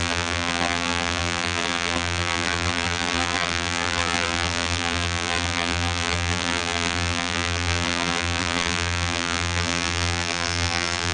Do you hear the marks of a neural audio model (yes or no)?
yes